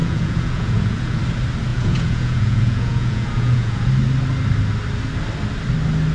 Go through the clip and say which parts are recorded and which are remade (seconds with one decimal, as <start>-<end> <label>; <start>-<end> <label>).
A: 0.0-1.2 remade; 1.2-1.7 recorded; 1.7-3.9 remade; 3.9-6.1 recorded

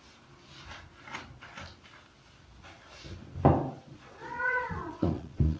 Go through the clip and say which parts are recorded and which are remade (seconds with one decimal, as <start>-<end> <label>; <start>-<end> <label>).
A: 0.0-3.9 recorded; 3.9-5.6 remade

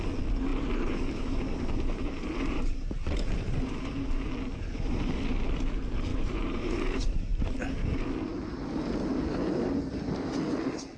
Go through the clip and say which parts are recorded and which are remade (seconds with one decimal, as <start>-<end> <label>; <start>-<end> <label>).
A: 0.0-0.5 recorded; 0.5-5.1 remade; 5.1-6.1 recorded; 6.1-7.4 remade; 7.4-11.0 recorded

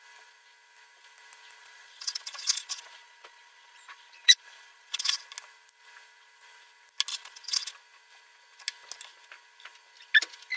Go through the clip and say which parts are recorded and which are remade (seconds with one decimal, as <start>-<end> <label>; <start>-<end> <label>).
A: 0.0-1.6 recorded; 1.6-5.2 remade; 5.2-7.1 recorded; 7.1-7.7 remade; 7.7-10.6 recorded

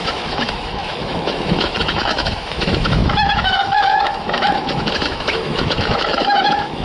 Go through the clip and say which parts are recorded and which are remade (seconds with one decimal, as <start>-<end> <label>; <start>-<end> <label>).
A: 0.0-6.8 remade